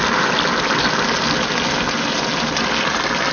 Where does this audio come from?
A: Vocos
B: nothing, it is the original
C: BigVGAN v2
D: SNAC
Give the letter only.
B